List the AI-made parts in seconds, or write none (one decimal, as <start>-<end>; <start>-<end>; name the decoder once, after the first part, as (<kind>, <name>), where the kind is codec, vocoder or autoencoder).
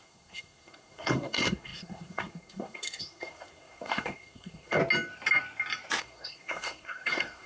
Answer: 0.0-4.8 (codec, SNAC); 6.0-7.5